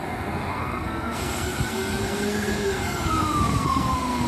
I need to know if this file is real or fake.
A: fake